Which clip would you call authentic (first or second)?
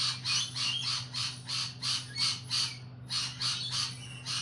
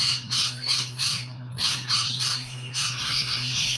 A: first